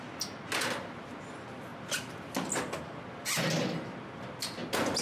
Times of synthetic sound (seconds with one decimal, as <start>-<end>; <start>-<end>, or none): none